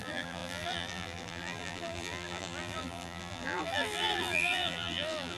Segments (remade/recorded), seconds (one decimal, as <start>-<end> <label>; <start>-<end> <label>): 0.0-5.4 remade

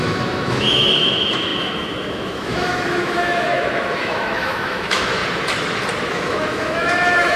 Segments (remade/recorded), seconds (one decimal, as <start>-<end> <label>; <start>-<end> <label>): 0.0-5.2 remade; 5.2-6.1 recorded; 6.1-7.4 remade

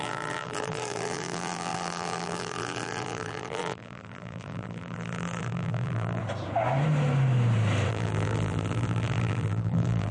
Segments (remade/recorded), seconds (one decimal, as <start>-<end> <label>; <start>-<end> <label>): 0.0-6.2 remade; 6.2-7.9 recorded; 7.9-10.1 remade

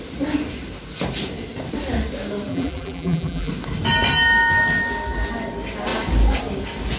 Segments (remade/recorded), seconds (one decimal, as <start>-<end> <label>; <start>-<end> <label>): 0.0-2.5 recorded; 2.5-3.5 remade; 3.5-7.0 recorded

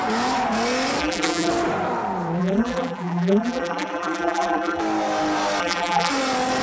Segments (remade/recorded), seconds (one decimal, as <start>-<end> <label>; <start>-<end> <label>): 0.0-1.0 recorded; 1.0-1.5 remade; 1.5-2.4 recorded; 2.4-4.8 remade; 4.8-5.6 recorded; 5.6-6.1 remade; 6.1-6.6 recorded

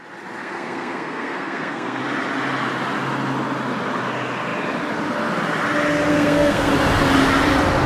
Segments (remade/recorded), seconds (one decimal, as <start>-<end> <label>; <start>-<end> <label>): 0.0-0.4 recorded; 0.4-2.0 remade; 2.0-6.1 recorded; 6.1-6.7 remade; 6.7-7.9 recorded

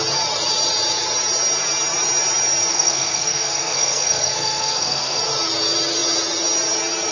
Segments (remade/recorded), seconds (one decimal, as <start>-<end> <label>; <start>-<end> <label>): 0.0-2.7 recorded; 2.7-5.2 remade; 5.2-7.1 recorded